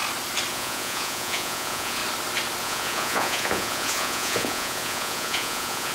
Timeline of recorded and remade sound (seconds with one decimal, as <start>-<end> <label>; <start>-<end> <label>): 0.0-0.5 recorded; 0.5-2.0 remade; 2.0-2.6 recorded; 2.6-5.9 remade